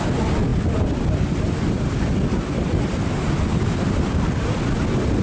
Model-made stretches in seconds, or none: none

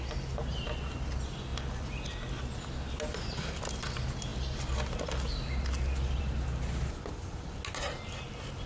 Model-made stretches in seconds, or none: 1.5-2.3 (vocoder, BigVGAN v2)

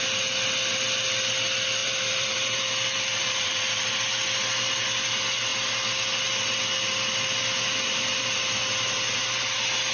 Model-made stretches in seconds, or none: 1.8-3.9 (vocoder, BigVGAN v2)

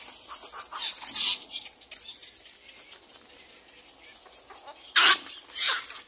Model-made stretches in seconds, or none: none

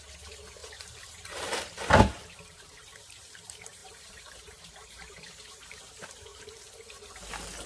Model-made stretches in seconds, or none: 0.6-1.6 (vocoder, BigVGAN v2); 3.8-5.8